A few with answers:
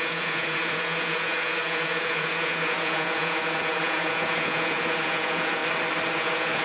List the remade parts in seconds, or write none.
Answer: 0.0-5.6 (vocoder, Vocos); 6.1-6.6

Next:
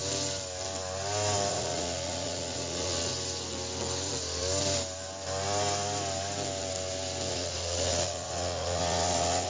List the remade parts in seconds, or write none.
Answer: 1.5-3.1 (vocoder, Vocos); 7.3-9.5